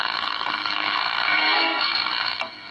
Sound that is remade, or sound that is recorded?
remade